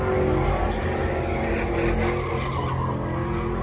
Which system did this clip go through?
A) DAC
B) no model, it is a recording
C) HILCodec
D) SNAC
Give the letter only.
B